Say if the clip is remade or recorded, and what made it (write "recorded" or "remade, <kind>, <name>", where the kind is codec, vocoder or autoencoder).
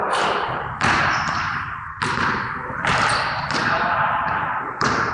remade, vocoder, BigVGAN v2